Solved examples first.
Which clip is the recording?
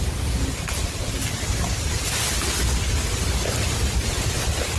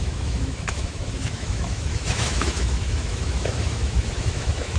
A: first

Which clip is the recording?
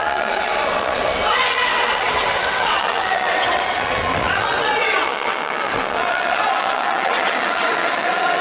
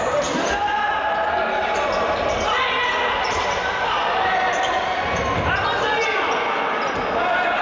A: second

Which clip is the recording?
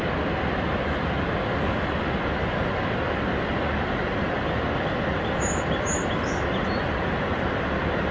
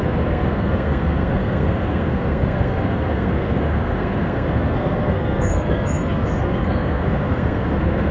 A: first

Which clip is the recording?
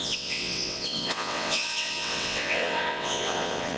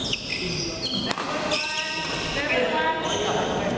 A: second